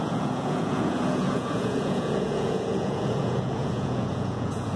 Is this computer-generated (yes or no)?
yes